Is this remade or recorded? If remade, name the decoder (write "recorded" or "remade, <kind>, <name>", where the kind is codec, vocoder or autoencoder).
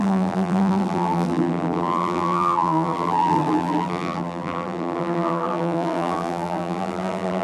remade, vocoder, BigVGAN v2